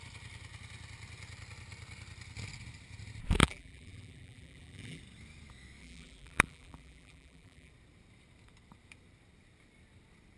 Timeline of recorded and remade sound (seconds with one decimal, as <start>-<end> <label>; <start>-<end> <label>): 0.0-3.4 recorded; 3.4-5.0 remade; 5.0-5.8 recorded; 5.8-7.7 remade; 7.7-10.4 recorded